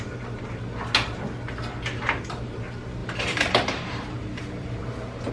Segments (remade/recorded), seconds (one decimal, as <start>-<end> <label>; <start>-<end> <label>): 0.0-3.0 recorded; 3.0-5.3 remade